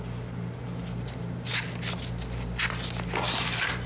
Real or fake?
real